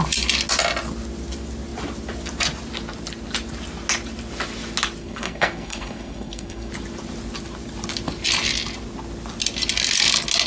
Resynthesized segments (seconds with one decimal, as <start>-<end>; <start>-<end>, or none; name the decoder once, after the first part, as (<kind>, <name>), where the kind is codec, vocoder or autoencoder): 5.0-6.7 (codec, SNAC)

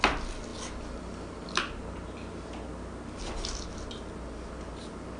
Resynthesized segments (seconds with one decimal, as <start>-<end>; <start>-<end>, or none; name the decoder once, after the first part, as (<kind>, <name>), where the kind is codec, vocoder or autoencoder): none

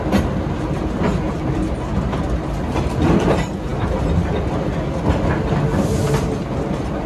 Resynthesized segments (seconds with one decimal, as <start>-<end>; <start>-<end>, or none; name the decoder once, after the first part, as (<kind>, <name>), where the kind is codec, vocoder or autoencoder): none

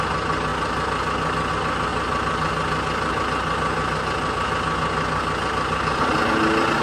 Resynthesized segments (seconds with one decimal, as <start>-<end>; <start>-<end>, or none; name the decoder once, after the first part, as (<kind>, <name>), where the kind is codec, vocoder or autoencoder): none

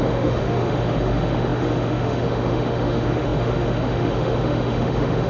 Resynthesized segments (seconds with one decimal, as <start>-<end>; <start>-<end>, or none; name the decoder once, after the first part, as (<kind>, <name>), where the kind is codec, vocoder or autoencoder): 0.0-5.3 (autoencoder, DAC-VAE)

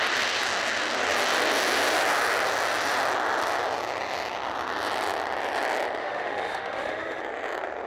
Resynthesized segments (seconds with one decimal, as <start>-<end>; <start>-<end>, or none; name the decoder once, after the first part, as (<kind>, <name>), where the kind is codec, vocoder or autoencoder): 6.0-7.2 (autoencoder, DAC-VAE)

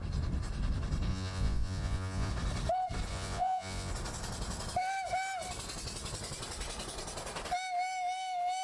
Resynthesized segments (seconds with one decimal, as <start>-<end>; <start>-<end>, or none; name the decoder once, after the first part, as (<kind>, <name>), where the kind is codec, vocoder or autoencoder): 1.1-2.3 (vocoder, Vocos); 3.1-3.9